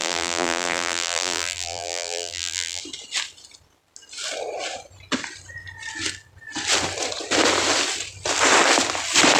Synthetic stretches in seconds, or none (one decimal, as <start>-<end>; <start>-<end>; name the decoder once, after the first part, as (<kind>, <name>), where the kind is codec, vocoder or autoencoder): 0.0-2.8 (vocoder, BigVGAN v2)